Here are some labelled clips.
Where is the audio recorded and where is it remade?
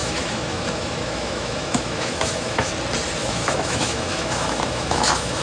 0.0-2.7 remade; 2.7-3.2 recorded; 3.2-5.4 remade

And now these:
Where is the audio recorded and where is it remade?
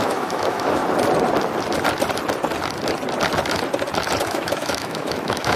0.0-0.8 remade; 0.8-4.2 recorded; 4.2-5.6 remade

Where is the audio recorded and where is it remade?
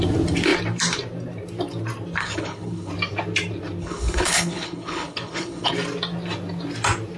0.0-2.2 recorded; 2.2-2.9 remade; 2.9-3.8 recorded; 3.8-5.7 remade; 5.7-7.2 recorded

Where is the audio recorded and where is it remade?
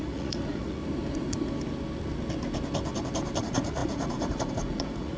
0.0-0.8 remade; 0.8-3.4 recorded; 3.4-5.2 remade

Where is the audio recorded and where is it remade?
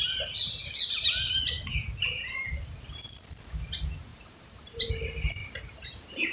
0.0-2.2 recorded; 2.2-2.8 remade; 2.8-4.1 recorded; 4.1-4.9 remade; 4.9-5.4 recorded; 5.4-6.3 remade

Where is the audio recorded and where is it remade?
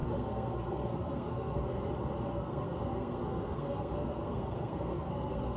0.0-1.8 remade; 1.8-2.3 recorded; 2.3-5.6 remade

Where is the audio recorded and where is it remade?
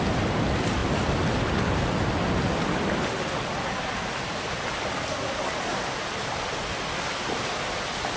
0.0-8.2 recorded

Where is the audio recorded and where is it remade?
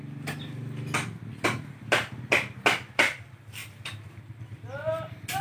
0.0-5.4 recorded